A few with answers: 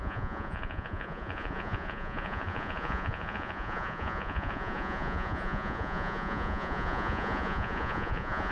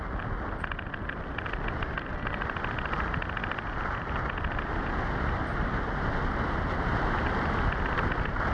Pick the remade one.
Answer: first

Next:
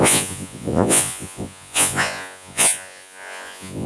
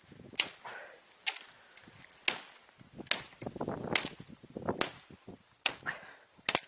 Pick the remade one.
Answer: first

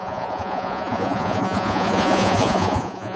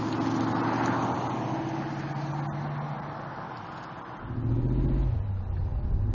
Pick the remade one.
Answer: first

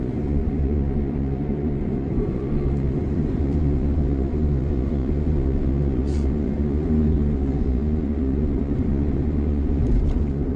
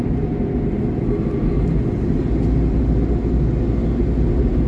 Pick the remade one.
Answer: first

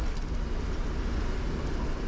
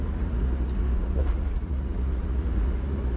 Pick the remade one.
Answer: second